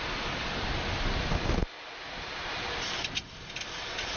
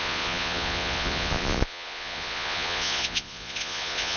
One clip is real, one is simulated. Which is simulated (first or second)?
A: second